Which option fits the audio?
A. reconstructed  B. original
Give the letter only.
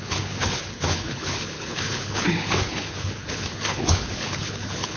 A